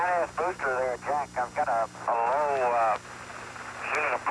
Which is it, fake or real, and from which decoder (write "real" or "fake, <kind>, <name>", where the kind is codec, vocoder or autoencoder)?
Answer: real